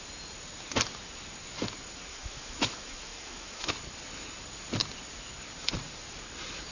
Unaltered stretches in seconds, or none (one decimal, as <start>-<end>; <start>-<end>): 0.0-2.1; 3.7-6.7